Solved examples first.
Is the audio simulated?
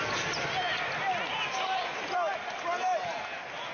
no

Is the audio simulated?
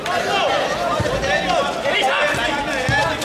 no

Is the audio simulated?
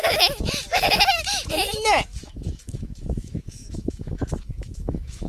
yes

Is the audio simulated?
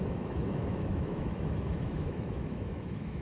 yes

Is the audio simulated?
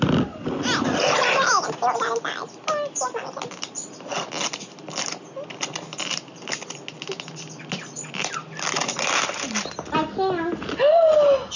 no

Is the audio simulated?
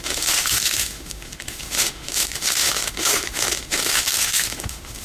yes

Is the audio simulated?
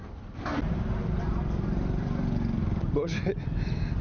no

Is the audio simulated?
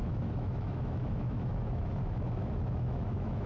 yes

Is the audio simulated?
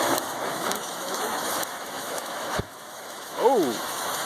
yes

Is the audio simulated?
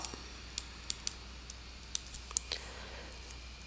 no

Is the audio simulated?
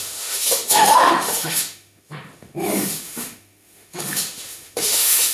yes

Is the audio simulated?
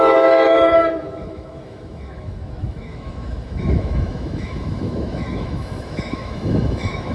yes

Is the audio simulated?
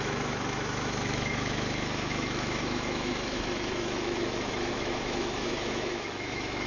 yes